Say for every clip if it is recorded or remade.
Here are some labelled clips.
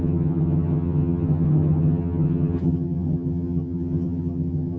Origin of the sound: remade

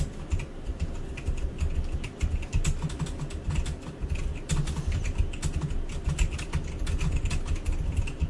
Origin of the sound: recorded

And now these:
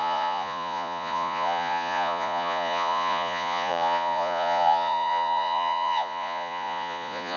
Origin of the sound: remade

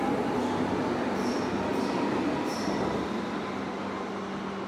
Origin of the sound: recorded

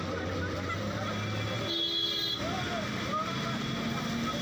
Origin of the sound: recorded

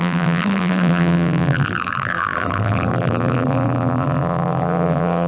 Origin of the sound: remade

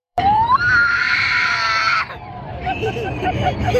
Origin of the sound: remade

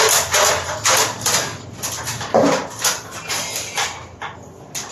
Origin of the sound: recorded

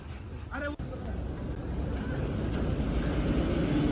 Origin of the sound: recorded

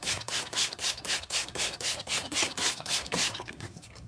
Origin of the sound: remade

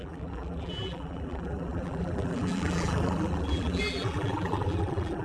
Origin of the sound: remade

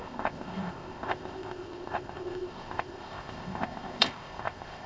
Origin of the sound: remade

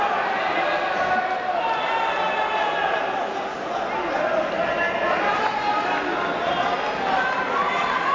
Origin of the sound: recorded